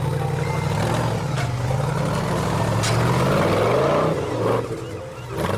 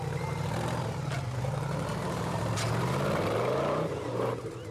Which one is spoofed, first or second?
second